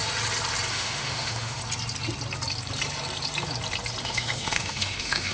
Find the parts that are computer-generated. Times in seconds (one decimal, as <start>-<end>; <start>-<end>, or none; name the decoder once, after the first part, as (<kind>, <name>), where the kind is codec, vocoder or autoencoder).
0.7-1.6 (autoencoder, DAC-VAE); 4.0-5.3